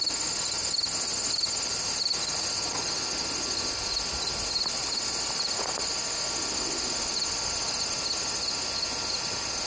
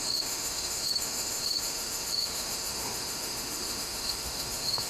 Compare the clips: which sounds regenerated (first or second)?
second